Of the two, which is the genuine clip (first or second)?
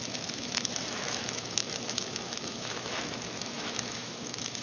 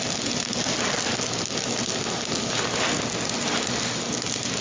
second